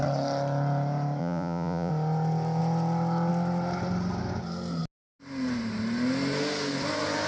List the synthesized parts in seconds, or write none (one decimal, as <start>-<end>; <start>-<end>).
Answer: 1.2-1.9